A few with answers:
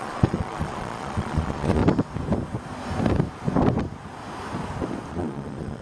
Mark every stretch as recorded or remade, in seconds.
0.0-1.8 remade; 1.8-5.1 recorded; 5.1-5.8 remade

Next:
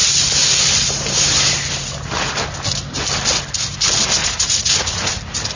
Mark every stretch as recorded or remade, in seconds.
0.0-4.2 recorded; 4.2-5.1 remade; 5.1-5.6 recorded

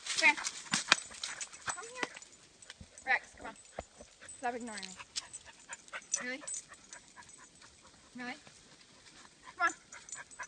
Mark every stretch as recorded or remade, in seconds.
0.0-10.5 recorded

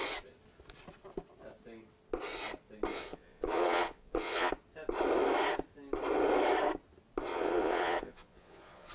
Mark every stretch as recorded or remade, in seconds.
0.0-2.9 recorded; 2.9-4.5 remade; 4.5-7.3 recorded; 7.3-8.9 remade

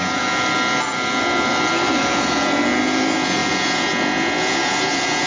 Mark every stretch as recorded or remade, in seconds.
0.0-5.3 recorded

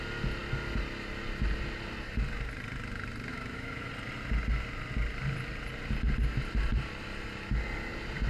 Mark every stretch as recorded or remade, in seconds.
0.0-3.3 recorded; 3.3-3.9 remade; 3.9-8.3 recorded

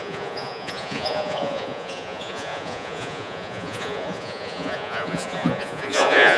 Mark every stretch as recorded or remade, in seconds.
0.0-6.4 remade